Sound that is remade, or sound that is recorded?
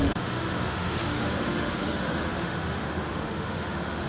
remade